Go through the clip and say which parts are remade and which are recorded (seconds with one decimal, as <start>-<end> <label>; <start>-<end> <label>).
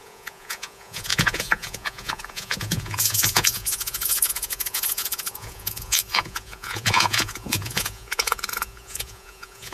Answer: 0.0-9.7 remade